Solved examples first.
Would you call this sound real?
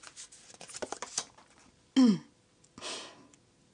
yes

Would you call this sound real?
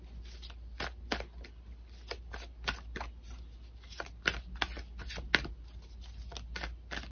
yes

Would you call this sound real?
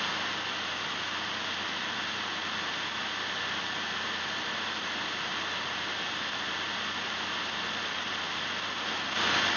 yes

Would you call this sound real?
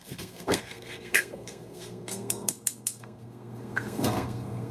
no